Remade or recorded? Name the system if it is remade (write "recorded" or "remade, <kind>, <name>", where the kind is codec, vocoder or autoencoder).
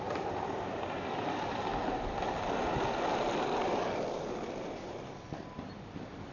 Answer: recorded